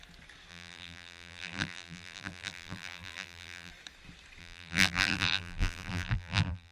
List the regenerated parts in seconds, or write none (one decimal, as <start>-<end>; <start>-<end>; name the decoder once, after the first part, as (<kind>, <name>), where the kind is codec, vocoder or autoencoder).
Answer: 0.5-3.7 (vocoder, BigVGAN v2); 4.4-6.7